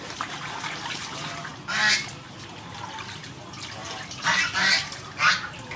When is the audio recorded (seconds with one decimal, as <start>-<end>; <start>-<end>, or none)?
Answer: 0.0-5.8